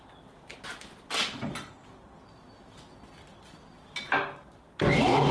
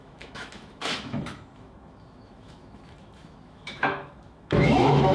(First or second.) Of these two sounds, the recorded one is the first